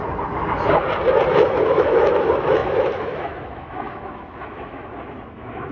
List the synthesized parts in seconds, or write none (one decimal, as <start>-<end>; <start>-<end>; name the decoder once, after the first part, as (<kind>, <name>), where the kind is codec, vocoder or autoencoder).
1.3-5.7 (autoencoder, DAC-VAE)